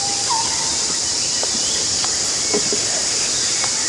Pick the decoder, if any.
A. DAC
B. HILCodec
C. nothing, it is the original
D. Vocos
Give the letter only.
C